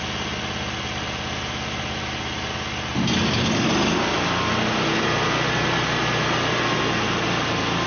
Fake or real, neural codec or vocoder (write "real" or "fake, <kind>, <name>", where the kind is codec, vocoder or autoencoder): real